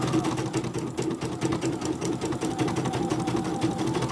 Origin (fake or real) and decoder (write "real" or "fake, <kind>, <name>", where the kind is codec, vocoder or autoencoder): real